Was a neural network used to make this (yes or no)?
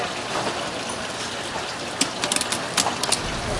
no